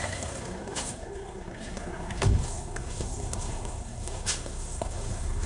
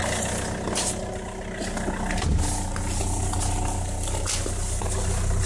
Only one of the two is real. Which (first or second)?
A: second